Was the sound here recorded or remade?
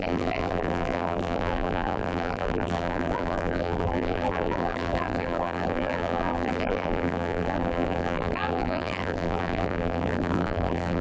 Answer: remade